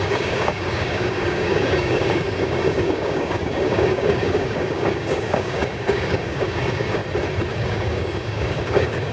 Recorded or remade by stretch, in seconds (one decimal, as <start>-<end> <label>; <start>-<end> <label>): 0.0-7.0 remade; 7.0-7.5 recorded; 7.5-9.1 remade